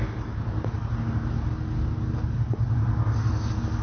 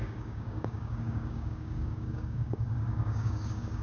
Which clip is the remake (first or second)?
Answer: second